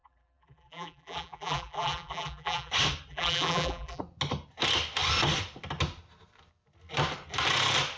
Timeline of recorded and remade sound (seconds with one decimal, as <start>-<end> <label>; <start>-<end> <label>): 0.0-2.7 remade; 2.7-3.1 recorded; 3.1-4.0 remade; 4.0-8.0 recorded